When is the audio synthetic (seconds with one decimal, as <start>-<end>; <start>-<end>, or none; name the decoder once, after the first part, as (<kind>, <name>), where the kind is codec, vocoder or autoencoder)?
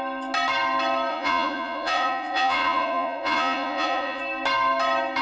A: 1.1-4.2 (vocoder, Vocos)